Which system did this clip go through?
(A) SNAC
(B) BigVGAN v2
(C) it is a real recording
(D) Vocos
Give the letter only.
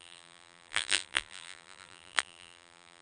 B